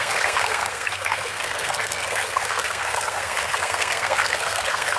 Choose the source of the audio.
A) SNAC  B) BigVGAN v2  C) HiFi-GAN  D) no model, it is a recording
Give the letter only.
A